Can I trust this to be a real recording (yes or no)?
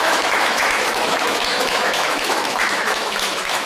no